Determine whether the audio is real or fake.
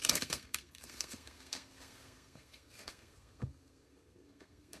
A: fake